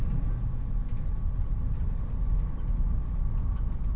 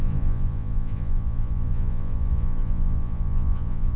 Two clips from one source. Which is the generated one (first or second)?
second